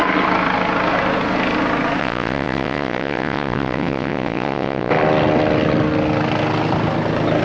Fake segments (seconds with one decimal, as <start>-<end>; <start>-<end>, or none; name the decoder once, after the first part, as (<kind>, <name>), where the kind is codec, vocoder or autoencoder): 2.0-4.9 (vocoder, WaveNeXt)